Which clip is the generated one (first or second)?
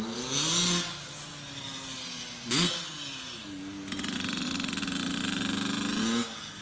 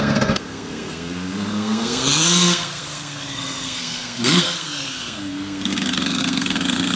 second